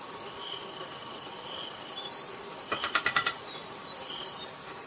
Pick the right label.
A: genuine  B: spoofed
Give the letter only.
A